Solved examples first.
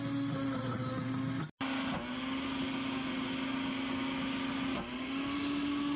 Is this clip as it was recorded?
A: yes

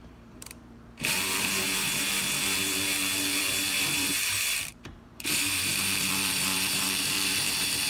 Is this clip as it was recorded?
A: no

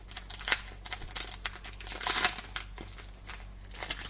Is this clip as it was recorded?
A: yes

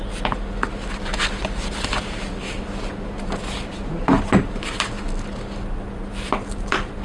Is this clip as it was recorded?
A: yes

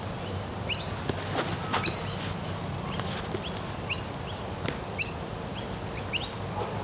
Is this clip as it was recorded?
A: yes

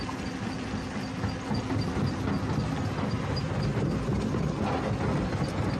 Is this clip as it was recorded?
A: yes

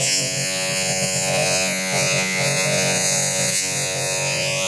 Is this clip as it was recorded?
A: no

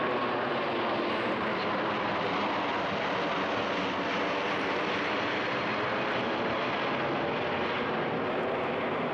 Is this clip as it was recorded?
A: yes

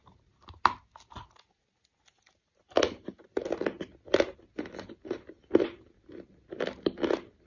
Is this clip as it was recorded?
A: yes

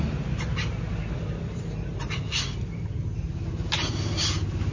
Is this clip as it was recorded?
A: yes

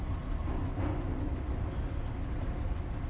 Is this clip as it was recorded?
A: yes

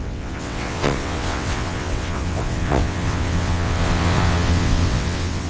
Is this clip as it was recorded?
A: no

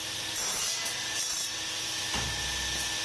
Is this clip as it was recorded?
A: yes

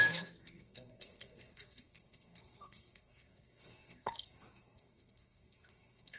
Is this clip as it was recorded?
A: no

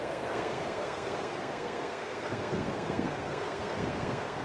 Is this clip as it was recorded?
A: no